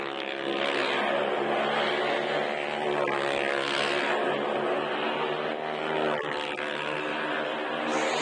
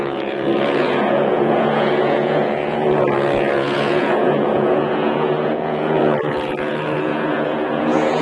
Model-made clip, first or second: second